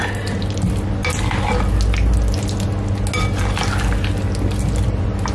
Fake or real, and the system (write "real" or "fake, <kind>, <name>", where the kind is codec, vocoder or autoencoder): real